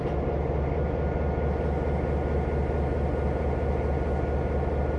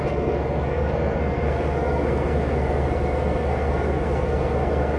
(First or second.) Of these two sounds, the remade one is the second